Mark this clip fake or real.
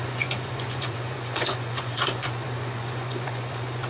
fake